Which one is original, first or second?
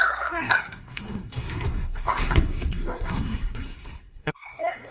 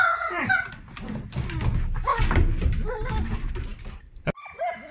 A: second